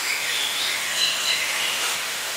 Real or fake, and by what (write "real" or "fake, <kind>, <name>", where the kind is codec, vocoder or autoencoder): fake, autoencoder, DAC-VAE